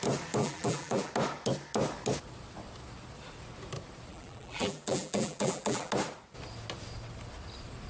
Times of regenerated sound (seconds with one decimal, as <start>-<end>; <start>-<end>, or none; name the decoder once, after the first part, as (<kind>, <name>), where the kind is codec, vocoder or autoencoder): 0.4-1.1 (vocoder, BigVGAN v2); 4.1-5.9

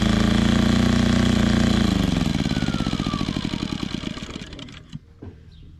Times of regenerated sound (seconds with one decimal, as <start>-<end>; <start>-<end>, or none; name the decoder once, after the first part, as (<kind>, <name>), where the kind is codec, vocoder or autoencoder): none

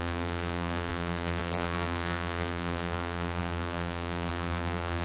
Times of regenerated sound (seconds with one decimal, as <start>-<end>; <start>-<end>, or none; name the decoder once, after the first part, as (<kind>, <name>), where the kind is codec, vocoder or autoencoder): 0.0-5.0 (vocoder, BigVGAN v2)